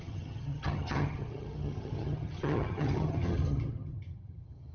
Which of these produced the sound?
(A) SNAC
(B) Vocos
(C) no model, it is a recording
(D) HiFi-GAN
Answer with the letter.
D